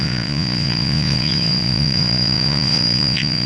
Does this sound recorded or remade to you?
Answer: remade